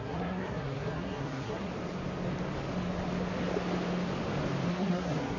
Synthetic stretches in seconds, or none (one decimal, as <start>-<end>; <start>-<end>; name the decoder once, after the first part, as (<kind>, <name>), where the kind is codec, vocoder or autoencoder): 0.0-1.7 (codec, SNAC); 4.7-5.4